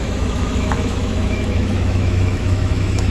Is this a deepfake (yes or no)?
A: yes